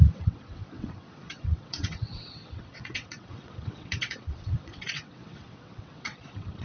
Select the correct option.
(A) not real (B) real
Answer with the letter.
A